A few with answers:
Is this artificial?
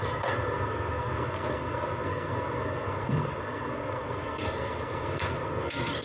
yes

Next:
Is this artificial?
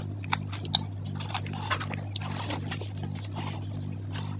no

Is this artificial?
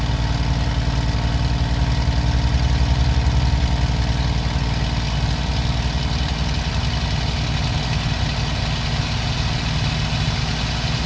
no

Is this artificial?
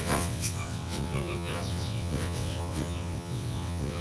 yes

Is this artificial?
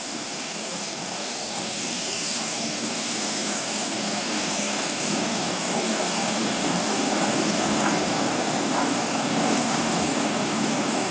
yes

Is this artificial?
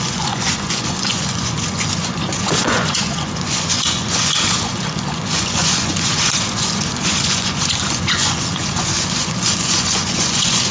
yes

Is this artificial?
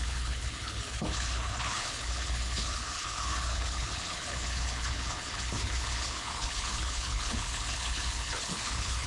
yes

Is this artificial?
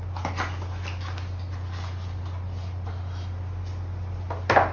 no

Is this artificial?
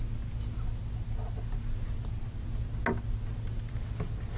no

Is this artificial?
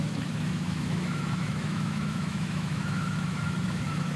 yes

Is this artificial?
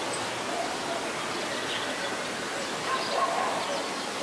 no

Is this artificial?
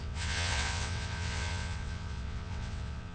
yes